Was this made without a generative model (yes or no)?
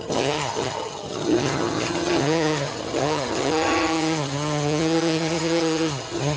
no